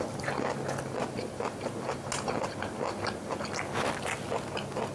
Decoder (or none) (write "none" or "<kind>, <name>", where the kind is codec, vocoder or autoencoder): none